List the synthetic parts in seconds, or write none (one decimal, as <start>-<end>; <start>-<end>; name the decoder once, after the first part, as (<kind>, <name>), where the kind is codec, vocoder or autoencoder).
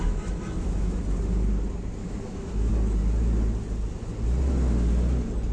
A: 0.0-1.0 (autoencoder, DAC-VAE); 2.0-2.7